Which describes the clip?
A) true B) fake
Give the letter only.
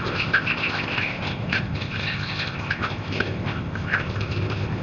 B